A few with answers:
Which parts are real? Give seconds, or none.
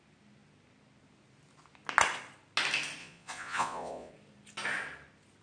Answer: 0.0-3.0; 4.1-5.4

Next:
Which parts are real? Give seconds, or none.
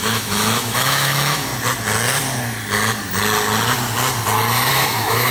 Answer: 1.5-4.7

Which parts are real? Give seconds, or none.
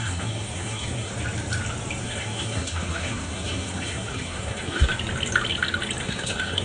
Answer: 1.1-2.0; 4.9-6.0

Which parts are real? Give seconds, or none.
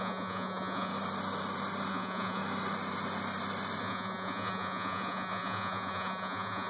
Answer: 0.9-1.9; 2.4-3.8